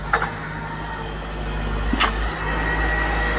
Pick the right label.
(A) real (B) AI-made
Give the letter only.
A